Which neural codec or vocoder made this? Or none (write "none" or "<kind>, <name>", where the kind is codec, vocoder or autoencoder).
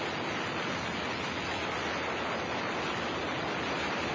none